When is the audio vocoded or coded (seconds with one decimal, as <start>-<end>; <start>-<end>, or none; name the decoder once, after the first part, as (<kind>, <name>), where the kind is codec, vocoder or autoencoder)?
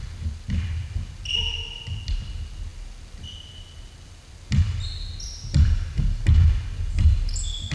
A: none